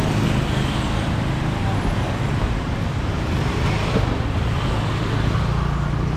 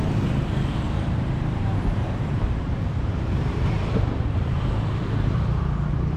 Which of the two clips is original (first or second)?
first